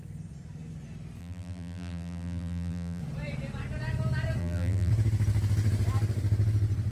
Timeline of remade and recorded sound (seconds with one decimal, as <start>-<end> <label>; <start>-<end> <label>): 0.0-1.2 recorded; 1.2-3.0 remade; 3.0-4.4 recorded; 4.4-4.9 remade; 4.9-6.9 recorded